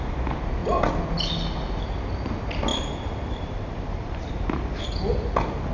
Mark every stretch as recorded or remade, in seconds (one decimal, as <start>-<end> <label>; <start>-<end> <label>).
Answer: 0.0-2.7 recorded; 2.7-4.9 remade; 4.9-5.7 recorded